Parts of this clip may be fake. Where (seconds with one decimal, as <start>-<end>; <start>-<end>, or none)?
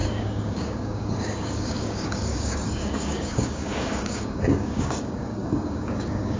0.0-6.4